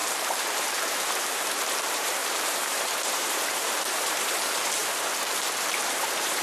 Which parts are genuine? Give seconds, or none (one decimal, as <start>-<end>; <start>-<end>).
4.8-5.6